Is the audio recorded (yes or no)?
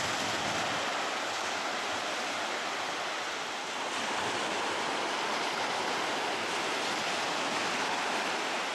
yes